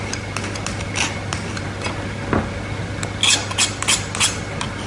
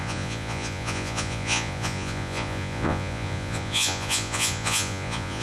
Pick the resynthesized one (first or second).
second